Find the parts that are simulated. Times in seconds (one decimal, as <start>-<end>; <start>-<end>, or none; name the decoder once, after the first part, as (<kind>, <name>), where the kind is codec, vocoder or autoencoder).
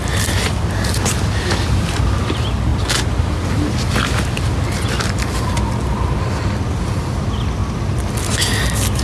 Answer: none